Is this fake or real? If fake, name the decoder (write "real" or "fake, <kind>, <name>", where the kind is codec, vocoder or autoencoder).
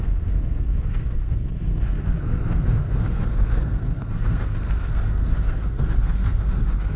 fake, codec, SNAC